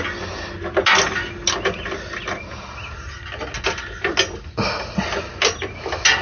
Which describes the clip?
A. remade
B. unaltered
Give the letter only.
B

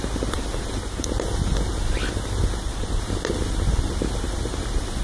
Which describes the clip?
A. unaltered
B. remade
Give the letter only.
A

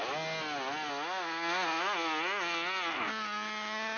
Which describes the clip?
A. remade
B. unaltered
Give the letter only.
B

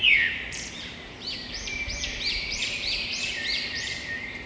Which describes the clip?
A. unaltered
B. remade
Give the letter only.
B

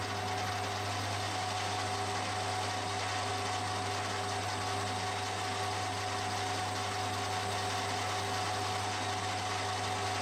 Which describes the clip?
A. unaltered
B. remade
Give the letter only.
A